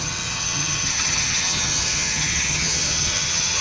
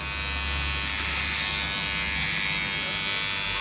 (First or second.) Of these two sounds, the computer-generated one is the first